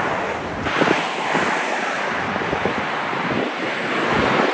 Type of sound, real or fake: real